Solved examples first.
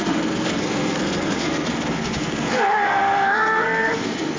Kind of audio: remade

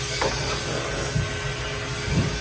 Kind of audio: recorded